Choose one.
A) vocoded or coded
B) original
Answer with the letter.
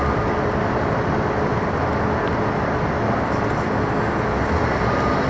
B